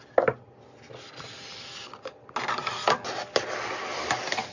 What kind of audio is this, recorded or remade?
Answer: recorded